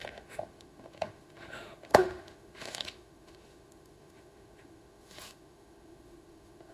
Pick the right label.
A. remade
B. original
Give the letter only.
A